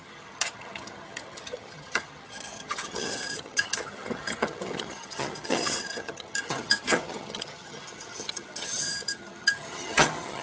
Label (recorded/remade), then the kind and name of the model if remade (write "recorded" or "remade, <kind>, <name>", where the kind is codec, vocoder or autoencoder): remade, vocoder, HiFi-GAN